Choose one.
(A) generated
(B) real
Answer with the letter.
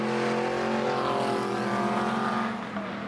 B